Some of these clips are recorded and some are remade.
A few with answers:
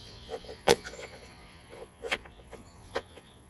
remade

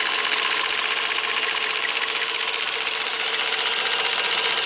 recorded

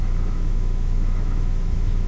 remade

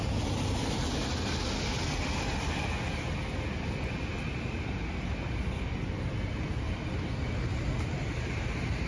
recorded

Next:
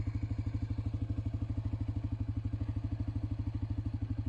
recorded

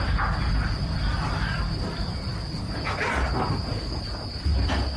recorded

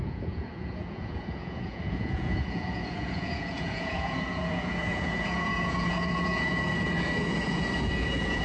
remade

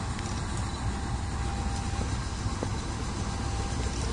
recorded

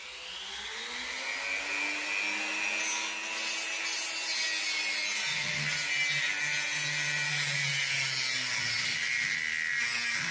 recorded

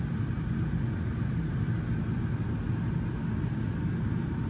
recorded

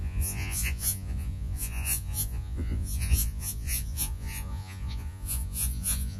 remade